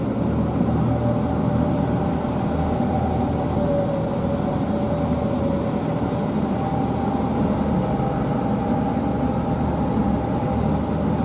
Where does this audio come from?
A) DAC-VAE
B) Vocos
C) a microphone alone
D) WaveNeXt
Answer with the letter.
C